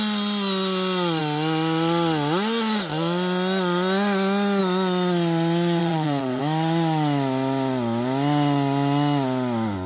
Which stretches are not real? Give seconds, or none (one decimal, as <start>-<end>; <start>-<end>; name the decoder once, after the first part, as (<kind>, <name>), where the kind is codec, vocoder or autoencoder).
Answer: 5.8-6.4 (vocoder, Vocos)